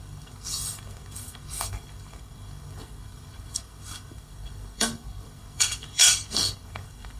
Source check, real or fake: fake